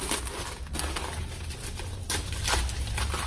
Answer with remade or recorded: recorded